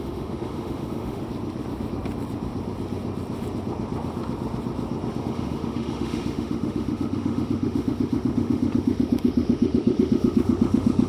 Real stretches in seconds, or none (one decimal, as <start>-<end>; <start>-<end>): 1.2-5.2